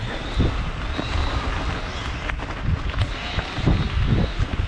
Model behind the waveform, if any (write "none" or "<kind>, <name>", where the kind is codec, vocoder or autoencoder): none